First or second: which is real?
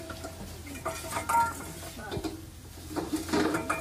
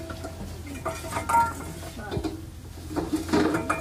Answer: second